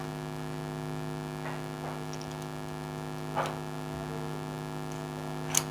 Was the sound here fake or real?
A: real